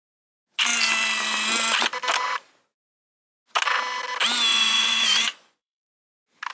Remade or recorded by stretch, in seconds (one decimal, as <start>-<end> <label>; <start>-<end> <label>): 0.0-4.5 recorded; 4.5-5.9 remade; 5.9-6.5 recorded